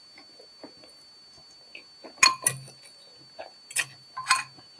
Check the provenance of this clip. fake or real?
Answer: real